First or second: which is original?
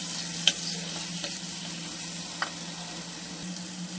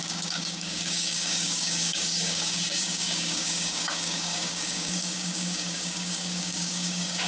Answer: first